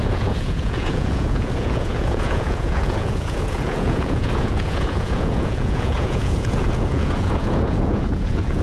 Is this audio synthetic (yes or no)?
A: yes